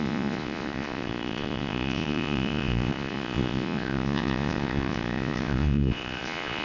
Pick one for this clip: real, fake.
fake